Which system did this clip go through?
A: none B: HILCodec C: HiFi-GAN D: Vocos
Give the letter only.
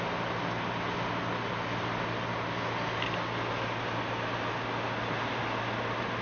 A